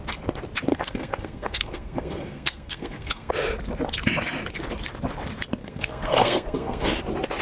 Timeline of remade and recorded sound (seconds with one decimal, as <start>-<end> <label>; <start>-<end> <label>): 0.0-0.7 recorded; 0.7-3.3 remade; 3.3-5.6 recorded; 5.6-7.0 remade; 7.0-7.4 recorded